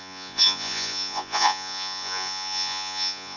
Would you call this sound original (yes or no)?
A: no